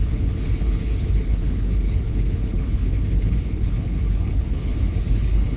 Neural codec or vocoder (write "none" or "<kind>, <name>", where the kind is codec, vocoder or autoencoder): codec, HILCodec